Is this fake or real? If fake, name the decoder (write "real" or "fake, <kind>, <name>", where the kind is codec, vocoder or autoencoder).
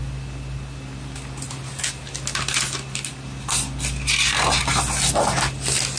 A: real